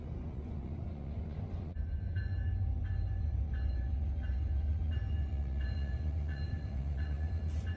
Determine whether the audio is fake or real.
fake